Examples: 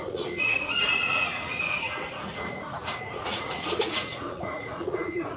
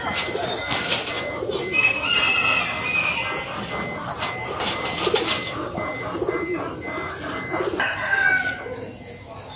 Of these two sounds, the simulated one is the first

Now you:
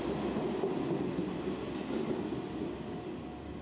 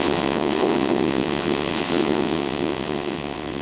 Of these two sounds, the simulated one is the second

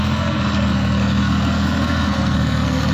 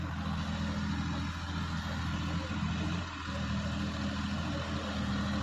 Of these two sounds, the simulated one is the first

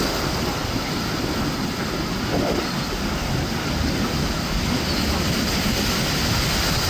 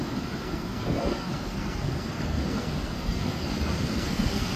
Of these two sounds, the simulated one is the second